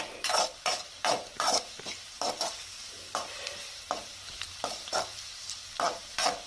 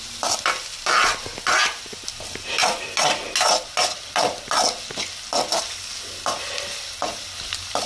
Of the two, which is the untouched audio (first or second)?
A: second